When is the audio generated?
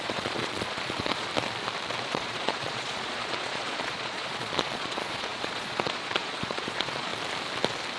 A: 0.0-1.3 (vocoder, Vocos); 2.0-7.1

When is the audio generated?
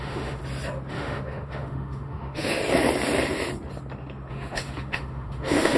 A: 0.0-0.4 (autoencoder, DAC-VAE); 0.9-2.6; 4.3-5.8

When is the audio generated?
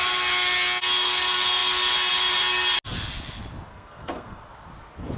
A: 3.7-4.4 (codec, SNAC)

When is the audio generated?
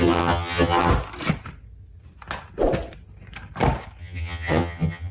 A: 0.0-0.9 (vocoder, HiFi-GAN); 4.0-5.1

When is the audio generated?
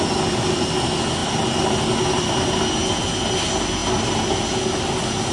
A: none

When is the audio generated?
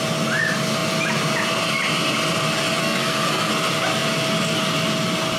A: 2.8-3.5 (codec, SNAC)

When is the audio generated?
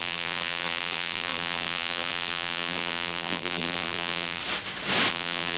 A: 0.0-4.4 (vocoder, BigVGAN v2); 5.1-5.6